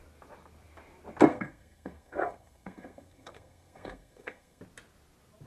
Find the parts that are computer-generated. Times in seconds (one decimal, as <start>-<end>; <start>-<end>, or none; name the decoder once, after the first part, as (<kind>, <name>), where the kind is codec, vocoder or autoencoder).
1.3-4.6 (codec, SNAC)